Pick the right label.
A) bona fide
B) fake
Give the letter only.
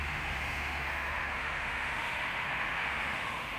B